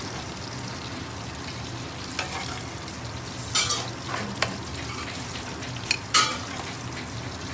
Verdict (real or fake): real